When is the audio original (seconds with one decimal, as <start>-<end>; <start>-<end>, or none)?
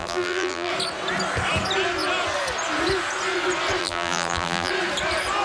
0.7-3.8; 4.7-5.4